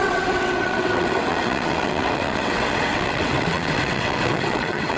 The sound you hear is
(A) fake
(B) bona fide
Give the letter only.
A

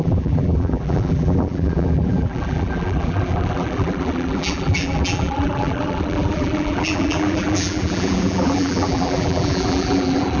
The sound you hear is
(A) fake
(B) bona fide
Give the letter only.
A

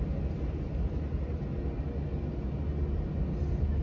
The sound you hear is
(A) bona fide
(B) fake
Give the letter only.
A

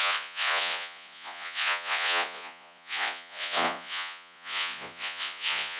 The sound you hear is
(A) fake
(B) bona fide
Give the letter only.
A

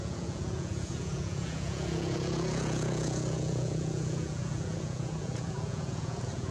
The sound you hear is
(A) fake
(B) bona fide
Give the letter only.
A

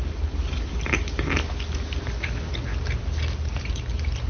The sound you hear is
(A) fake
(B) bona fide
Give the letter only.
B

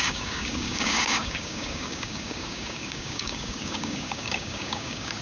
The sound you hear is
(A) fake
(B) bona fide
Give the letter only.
A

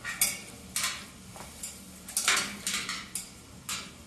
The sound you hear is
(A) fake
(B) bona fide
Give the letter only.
B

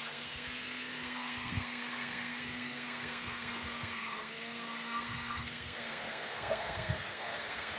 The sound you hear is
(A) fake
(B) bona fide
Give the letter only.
A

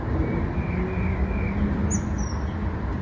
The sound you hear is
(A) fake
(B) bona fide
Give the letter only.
B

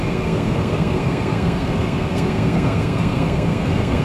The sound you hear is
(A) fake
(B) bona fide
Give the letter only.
A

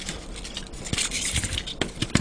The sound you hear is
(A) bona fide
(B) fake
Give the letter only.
A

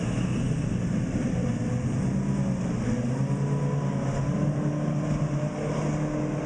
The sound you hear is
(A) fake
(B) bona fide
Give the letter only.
B